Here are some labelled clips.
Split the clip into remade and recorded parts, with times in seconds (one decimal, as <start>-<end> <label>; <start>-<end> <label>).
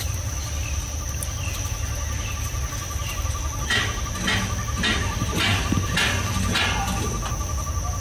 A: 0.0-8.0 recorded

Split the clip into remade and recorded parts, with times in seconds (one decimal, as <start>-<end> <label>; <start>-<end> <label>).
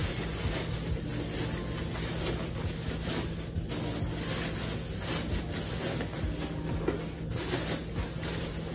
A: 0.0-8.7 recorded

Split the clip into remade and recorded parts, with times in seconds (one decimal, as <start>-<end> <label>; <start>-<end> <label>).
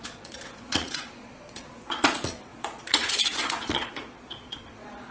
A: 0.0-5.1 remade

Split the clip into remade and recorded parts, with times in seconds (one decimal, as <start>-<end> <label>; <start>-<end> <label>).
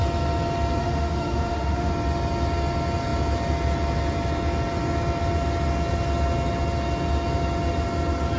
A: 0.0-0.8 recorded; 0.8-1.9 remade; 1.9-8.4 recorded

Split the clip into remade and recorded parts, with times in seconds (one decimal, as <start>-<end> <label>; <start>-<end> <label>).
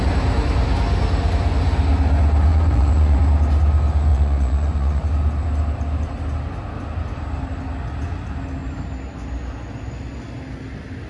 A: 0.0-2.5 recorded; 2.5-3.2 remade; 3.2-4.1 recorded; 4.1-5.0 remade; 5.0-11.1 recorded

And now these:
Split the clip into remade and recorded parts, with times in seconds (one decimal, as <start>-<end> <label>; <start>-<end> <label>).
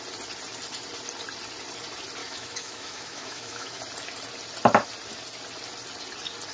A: 0.0-2.2 recorded; 2.2-3.8 remade; 3.8-6.5 recorded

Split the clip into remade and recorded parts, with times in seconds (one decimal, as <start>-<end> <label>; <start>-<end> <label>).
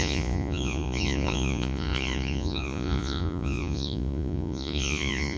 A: 0.0-5.4 remade